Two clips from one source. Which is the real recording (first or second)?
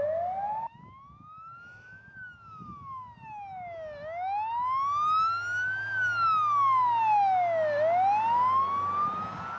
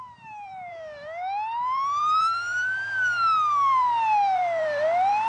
first